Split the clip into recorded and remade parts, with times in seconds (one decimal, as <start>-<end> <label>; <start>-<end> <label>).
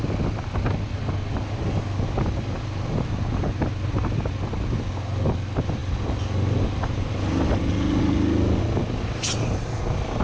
0.0-10.2 recorded